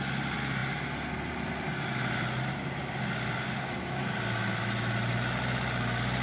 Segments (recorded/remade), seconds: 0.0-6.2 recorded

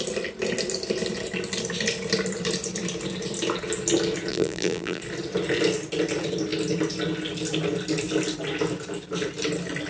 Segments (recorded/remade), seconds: 0.0-4.3 recorded; 4.3-5.0 remade; 5.0-9.9 recorded

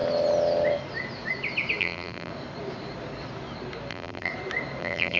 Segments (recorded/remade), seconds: 0.0-1.8 recorded; 1.8-2.3 remade; 2.3-3.9 recorded; 3.9-4.3 remade; 4.3-4.8 recorded; 4.8-5.2 remade

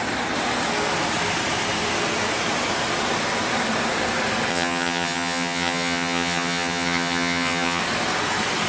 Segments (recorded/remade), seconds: 0.0-4.5 recorded; 4.5-7.8 remade; 7.8-8.7 recorded

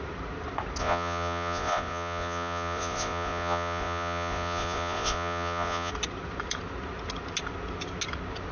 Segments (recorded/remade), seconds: 0.0-0.8 recorded; 0.8-5.9 remade; 5.9-8.5 recorded